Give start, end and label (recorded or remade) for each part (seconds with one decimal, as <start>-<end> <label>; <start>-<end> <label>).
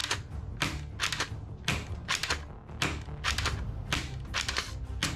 0.0-5.2 recorded